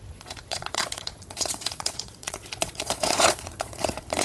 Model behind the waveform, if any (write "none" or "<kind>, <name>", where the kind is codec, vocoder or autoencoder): vocoder, Vocos